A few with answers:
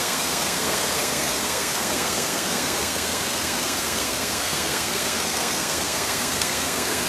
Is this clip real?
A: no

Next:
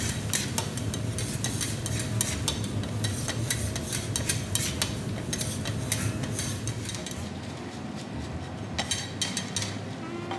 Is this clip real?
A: yes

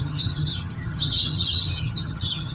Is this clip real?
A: no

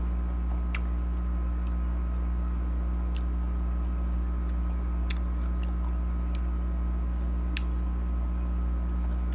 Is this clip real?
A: yes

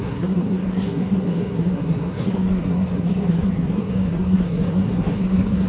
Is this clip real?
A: no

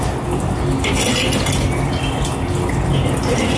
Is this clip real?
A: yes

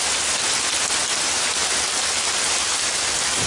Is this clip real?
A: yes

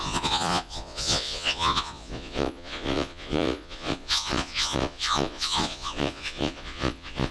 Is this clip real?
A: no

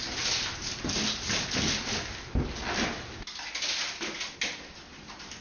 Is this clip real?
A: yes